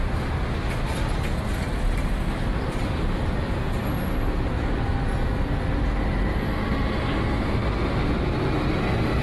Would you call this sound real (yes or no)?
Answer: yes